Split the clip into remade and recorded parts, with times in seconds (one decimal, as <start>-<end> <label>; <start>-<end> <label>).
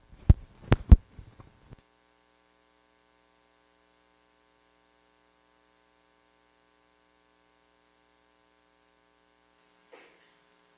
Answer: 0.0-10.8 recorded